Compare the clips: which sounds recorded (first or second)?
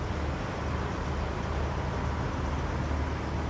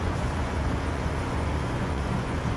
first